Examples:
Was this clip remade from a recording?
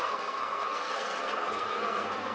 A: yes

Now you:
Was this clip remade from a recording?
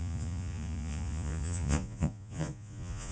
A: yes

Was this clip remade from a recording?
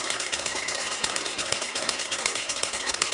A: yes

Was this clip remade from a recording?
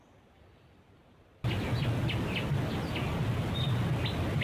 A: no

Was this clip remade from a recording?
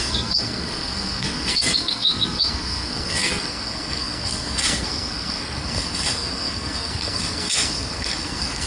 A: yes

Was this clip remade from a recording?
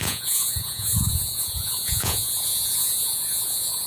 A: yes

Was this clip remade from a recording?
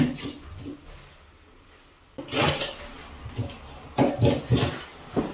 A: no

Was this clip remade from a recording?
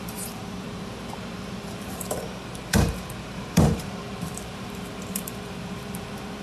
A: yes